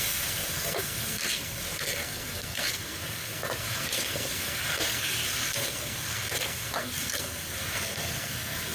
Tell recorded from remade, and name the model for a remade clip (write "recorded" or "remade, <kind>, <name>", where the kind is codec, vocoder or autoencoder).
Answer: remade, codec, SNAC